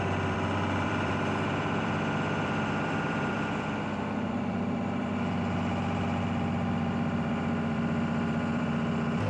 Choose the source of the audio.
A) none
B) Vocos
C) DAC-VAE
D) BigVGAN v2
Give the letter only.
D